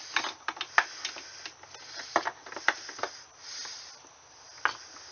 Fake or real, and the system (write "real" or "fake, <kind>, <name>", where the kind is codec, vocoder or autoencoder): real